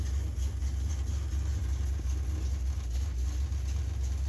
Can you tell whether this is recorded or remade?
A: recorded